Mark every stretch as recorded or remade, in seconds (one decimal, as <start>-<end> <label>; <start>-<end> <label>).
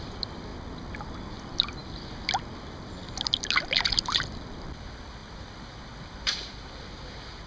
0.0-7.5 recorded